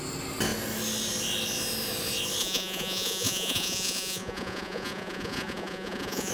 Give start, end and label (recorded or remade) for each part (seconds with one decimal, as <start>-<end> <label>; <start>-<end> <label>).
0.0-2.4 recorded; 2.4-6.3 remade